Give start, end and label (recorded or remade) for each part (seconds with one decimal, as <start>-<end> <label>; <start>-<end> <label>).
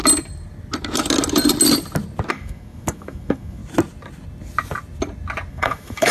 0.0-2.3 recorded; 2.3-3.6 remade; 3.6-5.5 recorded; 5.5-6.1 remade